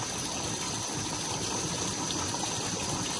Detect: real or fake real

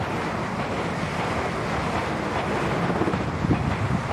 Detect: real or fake real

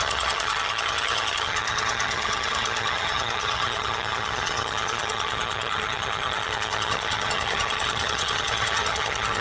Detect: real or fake fake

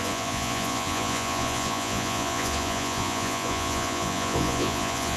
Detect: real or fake fake